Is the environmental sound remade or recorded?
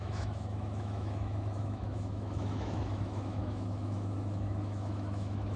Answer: remade